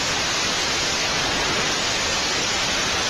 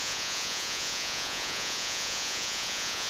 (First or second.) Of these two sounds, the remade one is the second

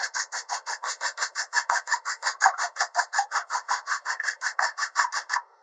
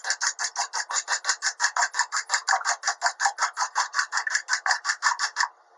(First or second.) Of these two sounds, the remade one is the first